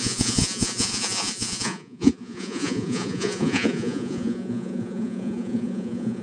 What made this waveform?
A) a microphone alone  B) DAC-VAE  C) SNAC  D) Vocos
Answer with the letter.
D